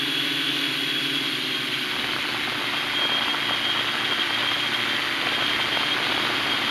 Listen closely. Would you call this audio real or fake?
real